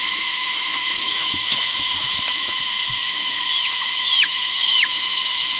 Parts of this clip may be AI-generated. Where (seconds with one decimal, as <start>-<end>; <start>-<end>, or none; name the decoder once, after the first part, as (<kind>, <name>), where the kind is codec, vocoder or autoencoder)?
0.0-5.6 (autoencoder, DAC-VAE)